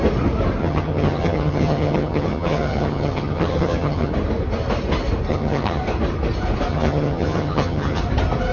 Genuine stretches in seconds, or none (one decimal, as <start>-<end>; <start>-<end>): 0.0-0.6; 4.1-5.3; 5.8-6.7; 8.0-8.5